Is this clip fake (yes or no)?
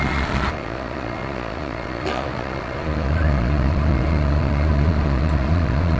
yes